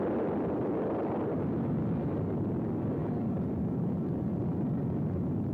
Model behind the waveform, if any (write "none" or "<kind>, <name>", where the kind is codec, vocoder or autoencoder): none